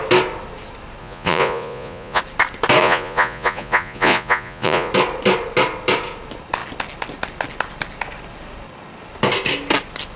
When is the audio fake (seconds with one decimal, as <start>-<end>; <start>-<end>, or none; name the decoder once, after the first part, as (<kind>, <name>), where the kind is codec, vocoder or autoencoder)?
1.0-2.2 (vocoder, Vocos); 2.8-4.9